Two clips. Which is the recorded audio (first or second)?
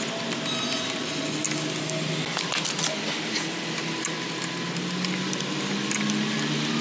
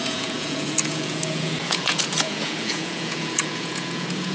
first